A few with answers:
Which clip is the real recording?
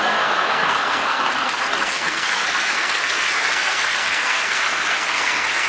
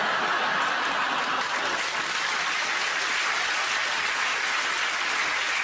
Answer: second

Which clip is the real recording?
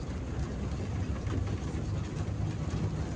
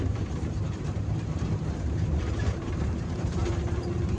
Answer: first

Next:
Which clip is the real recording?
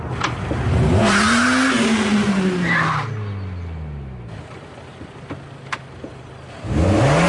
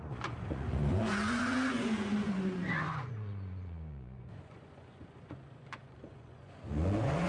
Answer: first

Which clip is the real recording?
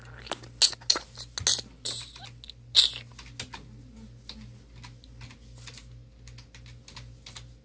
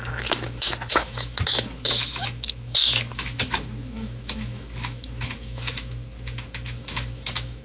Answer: first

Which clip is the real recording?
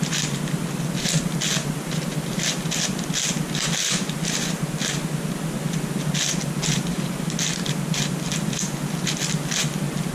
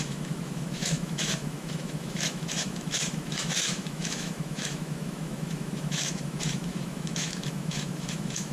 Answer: first